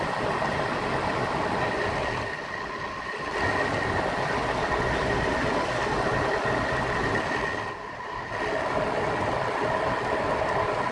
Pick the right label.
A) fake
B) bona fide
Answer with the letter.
B